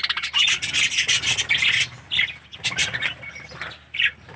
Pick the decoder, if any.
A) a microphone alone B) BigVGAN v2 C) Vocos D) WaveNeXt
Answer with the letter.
A